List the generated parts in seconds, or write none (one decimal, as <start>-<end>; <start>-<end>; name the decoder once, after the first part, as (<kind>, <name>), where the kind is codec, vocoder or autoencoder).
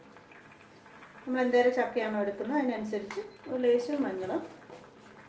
none